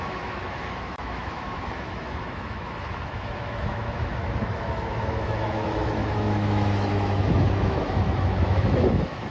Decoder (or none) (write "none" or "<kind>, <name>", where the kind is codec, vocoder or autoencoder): autoencoder, DAC-VAE